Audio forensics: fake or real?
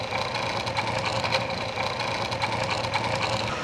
real